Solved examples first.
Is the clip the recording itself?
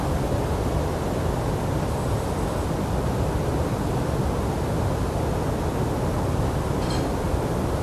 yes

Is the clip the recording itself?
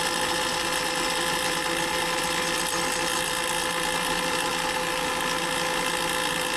yes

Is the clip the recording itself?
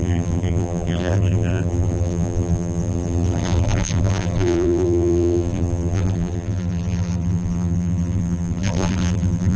no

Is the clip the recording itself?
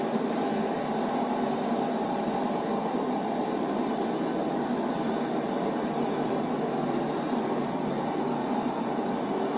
no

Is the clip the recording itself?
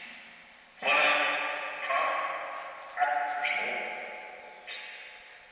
yes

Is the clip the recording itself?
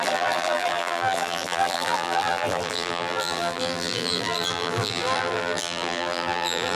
no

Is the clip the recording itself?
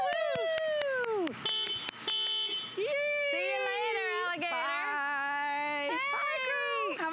yes